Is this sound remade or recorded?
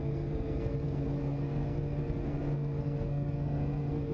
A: remade